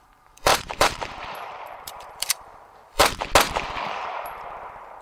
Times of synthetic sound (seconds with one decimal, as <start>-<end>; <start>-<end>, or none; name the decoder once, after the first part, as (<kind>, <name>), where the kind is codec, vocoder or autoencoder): 0.0-3.0 (vocoder, BigVGAN v2); 3.9-5.0